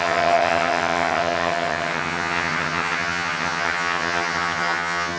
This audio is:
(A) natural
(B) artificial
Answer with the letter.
B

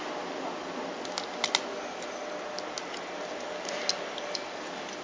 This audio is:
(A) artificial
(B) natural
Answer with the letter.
B